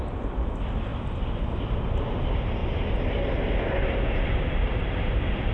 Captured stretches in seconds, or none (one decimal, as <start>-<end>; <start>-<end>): 0.0-5.5